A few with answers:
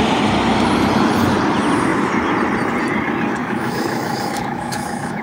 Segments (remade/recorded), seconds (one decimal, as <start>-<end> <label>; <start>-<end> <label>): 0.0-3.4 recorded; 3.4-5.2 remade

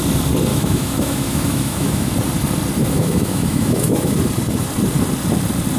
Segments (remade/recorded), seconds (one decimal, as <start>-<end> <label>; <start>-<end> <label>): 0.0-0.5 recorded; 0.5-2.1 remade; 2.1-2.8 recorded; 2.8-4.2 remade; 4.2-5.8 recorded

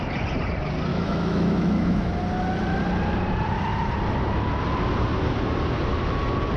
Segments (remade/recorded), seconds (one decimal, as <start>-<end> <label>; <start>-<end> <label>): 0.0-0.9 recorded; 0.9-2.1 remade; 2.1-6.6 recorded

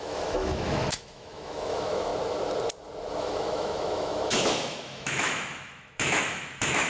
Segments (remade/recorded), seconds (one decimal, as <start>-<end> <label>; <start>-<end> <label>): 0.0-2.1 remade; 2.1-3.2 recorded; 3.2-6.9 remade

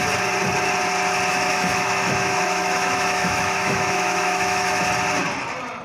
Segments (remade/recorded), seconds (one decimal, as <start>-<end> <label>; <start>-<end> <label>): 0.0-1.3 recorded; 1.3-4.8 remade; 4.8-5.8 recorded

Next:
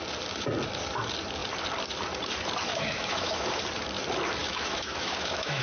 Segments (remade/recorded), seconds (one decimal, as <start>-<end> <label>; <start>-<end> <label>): 0.0-2.7 recorded; 2.7-3.6 remade; 3.6-4.4 recorded; 4.4-5.6 remade